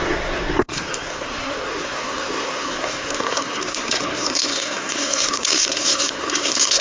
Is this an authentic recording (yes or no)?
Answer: no